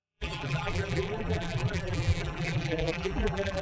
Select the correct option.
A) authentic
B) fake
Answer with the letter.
B